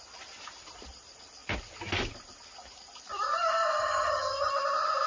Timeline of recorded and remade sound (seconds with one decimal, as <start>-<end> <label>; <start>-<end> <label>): 0.0-3.8 recorded; 3.8-4.5 remade; 4.5-5.1 recorded